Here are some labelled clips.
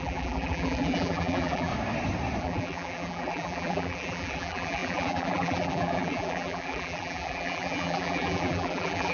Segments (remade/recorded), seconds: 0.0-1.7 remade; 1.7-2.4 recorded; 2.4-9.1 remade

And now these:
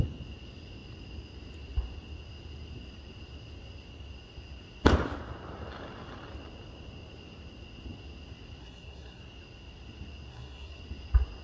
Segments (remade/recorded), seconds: 0.0-8.6 recorded; 8.6-9.2 remade; 9.2-10.3 recorded; 10.3-10.8 remade; 10.8-11.4 recorded

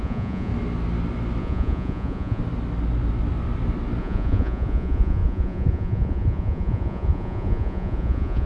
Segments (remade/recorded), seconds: 0.0-0.5 remade; 0.5-1.4 recorded; 1.4-2.4 remade; 2.4-4.0 recorded; 4.0-8.5 remade

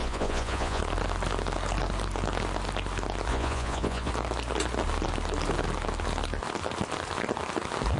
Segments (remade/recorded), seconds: 0.0-0.8 remade; 0.8-3.3 recorded; 3.3-4.1 remade; 4.1-8.0 recorded

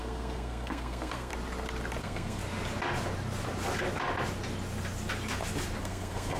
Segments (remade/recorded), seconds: 0.0-1.3 remade; 1.3-2.0 recorded; 2.0-2.4 remade; 2.4-5.8 recorded; 5.8-6.4 remade

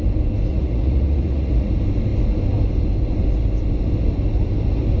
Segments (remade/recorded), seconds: 0.0-0.5 recorded; 0.5-1.7 remade; 1.7-5.0 recorded

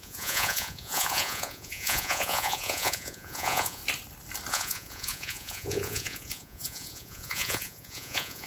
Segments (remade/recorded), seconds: 0.0-3.8 remade; 3.8-4.5 recorded; 4.5-8.5 remade

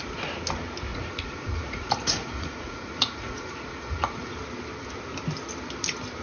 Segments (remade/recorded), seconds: 0.0-0.9 recorded; 0.9-4.3 remade; 4.3-6.2 recorded